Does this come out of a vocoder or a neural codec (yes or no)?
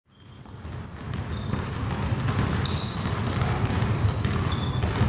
no